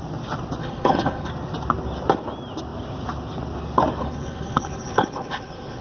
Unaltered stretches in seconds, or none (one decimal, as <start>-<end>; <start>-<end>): 0.0-0.6; 1.3-4.0